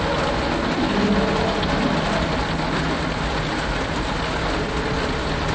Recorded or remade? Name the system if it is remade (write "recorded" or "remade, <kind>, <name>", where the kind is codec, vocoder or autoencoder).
recorded